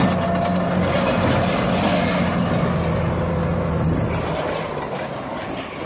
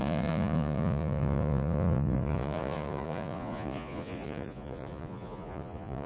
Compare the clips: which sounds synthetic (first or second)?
second